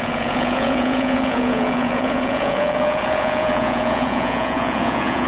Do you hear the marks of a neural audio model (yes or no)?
yes